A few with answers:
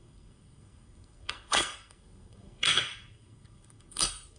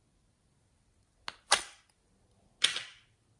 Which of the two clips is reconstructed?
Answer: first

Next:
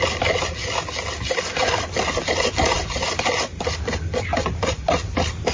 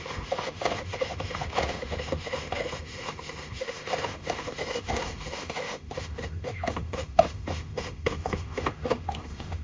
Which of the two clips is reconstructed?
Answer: second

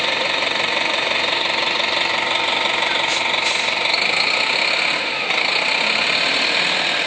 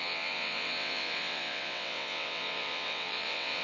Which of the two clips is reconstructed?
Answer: second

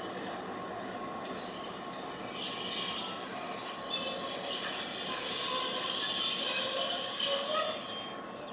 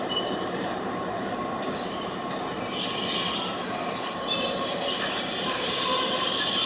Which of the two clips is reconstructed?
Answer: second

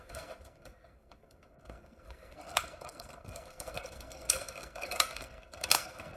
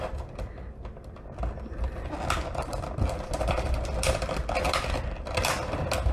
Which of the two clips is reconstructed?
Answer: first